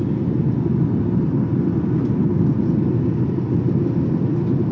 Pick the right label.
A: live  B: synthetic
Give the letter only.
A